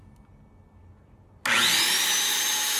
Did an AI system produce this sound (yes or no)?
no